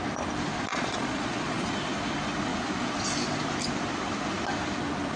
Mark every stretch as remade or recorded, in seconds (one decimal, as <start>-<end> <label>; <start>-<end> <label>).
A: 0.0-0.7 recorded; 0.7-1.7 remade; 1.7-5.2 recorded